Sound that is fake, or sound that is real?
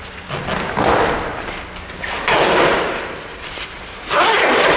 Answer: real